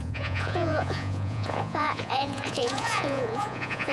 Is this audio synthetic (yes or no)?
yes